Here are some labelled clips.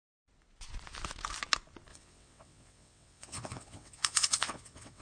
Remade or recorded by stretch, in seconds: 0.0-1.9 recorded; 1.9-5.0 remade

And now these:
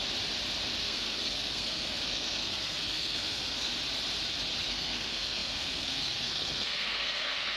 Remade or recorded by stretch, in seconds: 0.0-0.8 recorded; 0.8-3.7 remade; 3.7-4.6 recorded; 4.6-7.6 remade